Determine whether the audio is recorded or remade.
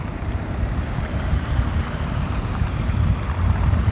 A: remade